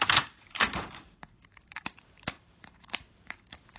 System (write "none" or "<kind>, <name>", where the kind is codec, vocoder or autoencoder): vocoder, BigVGAN v2